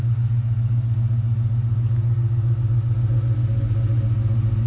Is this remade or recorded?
recorded